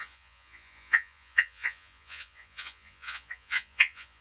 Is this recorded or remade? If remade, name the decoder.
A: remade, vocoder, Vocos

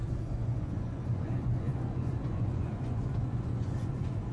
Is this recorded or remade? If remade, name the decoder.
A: remade, vocoder, Vocos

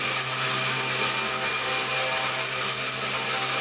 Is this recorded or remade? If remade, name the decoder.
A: recorded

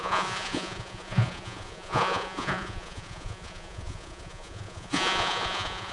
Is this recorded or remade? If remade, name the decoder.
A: remade, vocoder, Vocos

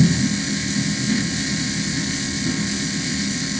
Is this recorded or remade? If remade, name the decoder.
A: recorded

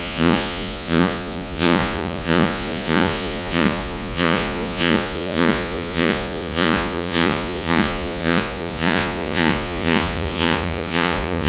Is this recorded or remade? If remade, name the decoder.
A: remade, vocoder, Vocos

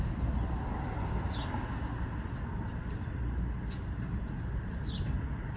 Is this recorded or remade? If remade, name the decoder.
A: recorded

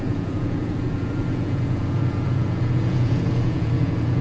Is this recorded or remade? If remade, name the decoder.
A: remade, vocoder, Vocos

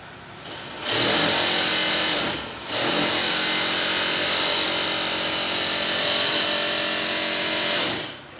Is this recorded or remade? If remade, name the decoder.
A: recorded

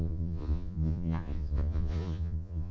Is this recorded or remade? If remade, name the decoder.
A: remade, vocoder, Vocos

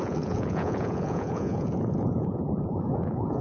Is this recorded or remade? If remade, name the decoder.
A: remade, vocoder, Vocos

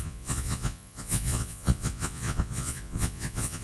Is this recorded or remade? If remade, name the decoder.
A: remade, vocoder, Vocos